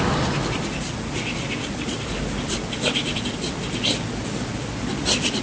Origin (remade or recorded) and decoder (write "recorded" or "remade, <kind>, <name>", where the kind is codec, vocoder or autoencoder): recorded